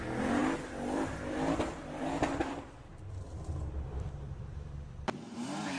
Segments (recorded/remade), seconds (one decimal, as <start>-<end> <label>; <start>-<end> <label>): 0.0-5.8 remade